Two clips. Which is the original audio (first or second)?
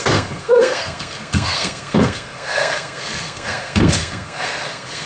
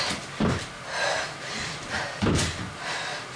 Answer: second